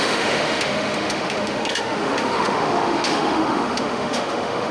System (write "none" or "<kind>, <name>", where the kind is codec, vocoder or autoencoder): autoencoder, DAC-VAE